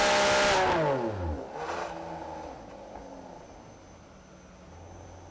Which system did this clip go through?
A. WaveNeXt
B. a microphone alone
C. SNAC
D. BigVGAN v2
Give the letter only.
B